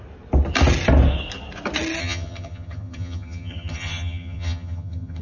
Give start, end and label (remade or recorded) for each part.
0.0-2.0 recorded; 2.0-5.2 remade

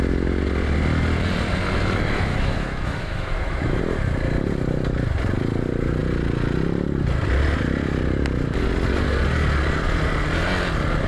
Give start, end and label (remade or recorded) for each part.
0.0-2.3 recorded; 2.3-3.8 remade; 3.8-11.1 recorded

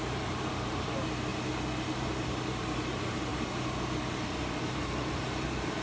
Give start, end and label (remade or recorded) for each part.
0.0-1.3 remade; 1.3-2.2 recorded; 2.2-3.3 remade; 3.3-4.4 recorded; 4.4-5.8 remade